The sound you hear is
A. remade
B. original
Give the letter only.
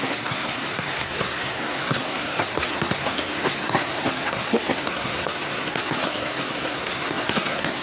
A